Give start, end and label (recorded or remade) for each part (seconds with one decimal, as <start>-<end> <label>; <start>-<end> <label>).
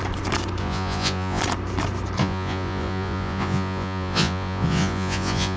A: 0.0-0.6 recorded; 0.6-1.4 remade; 1.4-2.2 recorded; 2.2-5.6 remade